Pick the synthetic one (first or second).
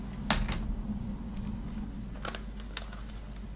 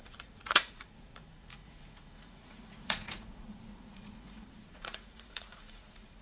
second